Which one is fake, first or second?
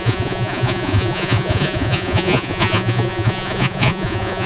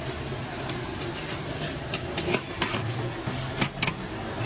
first